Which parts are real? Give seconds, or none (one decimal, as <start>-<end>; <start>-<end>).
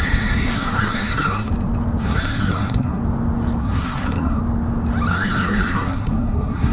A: 1.5-2.0; 3.0-3.6; 4.4-5.1